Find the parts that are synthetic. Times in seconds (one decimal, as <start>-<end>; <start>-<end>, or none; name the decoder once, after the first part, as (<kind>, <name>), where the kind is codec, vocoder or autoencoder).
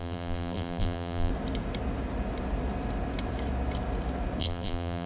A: 0.0-1.3 (vocoder, BigVGAN v2); 4.4-5.1